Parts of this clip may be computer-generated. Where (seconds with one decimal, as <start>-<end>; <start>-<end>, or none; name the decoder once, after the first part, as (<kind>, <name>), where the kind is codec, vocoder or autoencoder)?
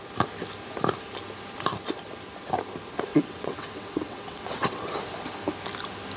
3.1-5.0 (vocoder, WaveNeXt)